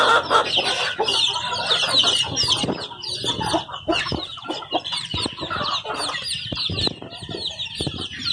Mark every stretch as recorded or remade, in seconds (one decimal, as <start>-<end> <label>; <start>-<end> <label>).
0.0-0.4 remade; 0.4-4.1 recorded; 4.1-5.1 remade; 5.1-7.7 recorded; 7.7-8.3 remade

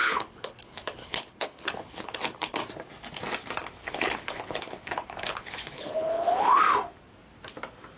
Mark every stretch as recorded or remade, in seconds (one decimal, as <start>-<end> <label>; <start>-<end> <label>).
0.0-2.6 remade; 2.6-3.8 recorded; 3.8-6.6 remade; 6.6-8.0 recorded

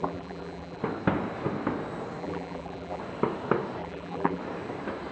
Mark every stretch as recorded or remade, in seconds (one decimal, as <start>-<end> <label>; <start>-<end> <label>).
0.0-0.8 remade; 0.8-2.2 recorded; 2.2-3.0 remade; 3.0-3.8 recorded; 3.8-4.4 remade; 4.4-5.1 recorded

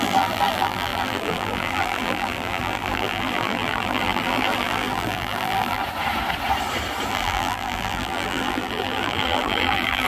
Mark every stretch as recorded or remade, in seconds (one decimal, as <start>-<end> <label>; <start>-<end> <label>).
0.0-5.8 remade; 5.8-7.1 recorded; 7.1-10.1 remade

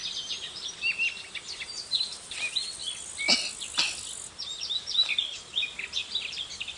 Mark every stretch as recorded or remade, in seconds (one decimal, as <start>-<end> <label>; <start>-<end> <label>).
0.0-1.4 remade; 1.4-6.8 recorded